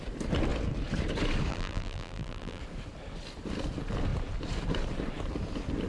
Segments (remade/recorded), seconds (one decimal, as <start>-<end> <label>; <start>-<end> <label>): 0.0-1.5 recorded; 1.5-2.6 remade; 2.6-5.9 recorded

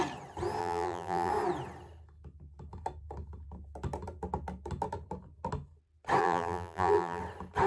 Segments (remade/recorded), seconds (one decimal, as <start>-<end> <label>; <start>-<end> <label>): 0.0-0.6 recorded; 0.6-1.3 remade; 1.3-6.2 recorded; 6.2-7.2 remade; 7.2-7.7 recorded

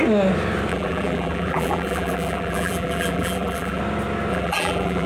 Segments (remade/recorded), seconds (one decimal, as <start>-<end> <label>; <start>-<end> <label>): 0.0-0.7 recorded; 0.7-3.8 remade; 3.8-4.3 recorded; 4.3-5.1 remade

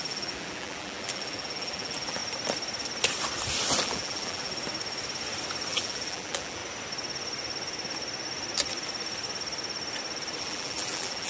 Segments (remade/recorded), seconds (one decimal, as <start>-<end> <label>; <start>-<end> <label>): 0.0-2.2 remade; 2.2-3.8 recorded; 3.8-4.5 remade; 4.5-5.7 recorded; 5.7-6.6 remade; 6.6-10.4 recorded; 10.4-11.3 remade